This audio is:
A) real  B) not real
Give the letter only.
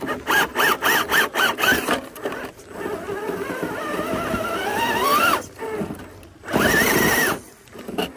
A